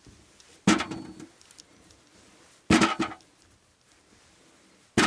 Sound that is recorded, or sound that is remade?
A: recorded